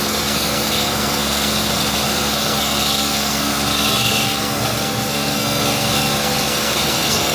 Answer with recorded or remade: remade